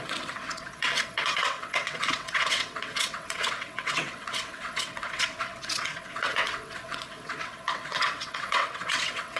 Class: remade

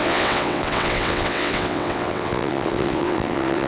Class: remade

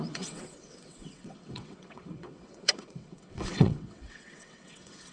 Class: remade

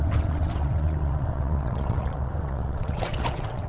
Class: remade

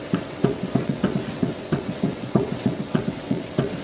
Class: remade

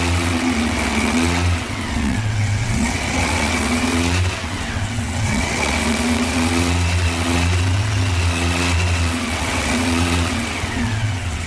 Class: remade